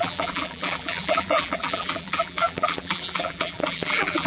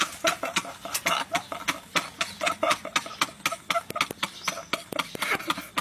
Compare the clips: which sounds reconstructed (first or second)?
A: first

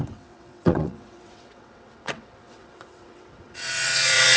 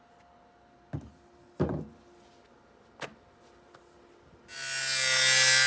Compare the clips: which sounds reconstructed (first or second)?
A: first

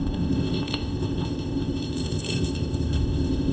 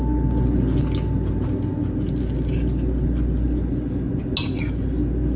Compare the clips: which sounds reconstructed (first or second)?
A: first